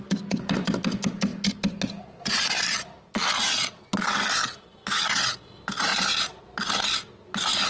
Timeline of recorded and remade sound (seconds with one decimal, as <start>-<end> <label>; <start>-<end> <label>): 0.0-7.7 recorded